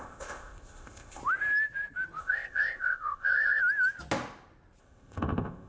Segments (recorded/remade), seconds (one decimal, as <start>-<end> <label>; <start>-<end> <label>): 0.0-1.2 remade; 1.2-2.2 recorded; 2.2-3.6 remade; 3.6-4.8 recorded; 4.8-5.7 remade